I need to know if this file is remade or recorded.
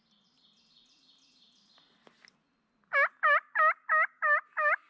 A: recorded